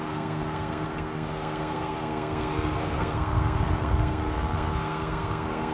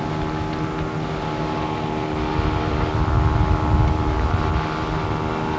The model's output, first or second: first